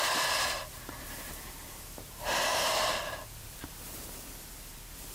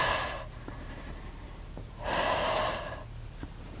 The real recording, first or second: second